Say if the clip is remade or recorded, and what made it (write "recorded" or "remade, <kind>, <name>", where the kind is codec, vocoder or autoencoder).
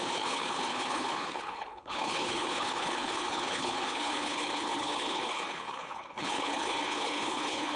remade, codec, HILCodec